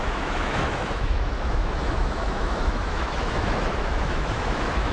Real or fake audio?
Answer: fake